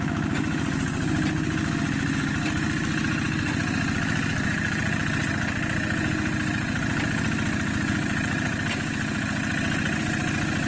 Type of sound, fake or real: real